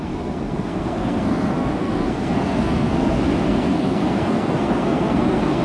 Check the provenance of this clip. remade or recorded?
remade